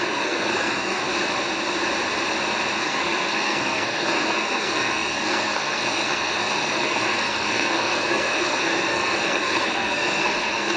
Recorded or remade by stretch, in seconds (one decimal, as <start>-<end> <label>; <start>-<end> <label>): 0.0-1.0 remade; 1.0-2.8 recorded; 2.8-10.8 remade